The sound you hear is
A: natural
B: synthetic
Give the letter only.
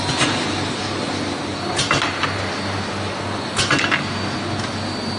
A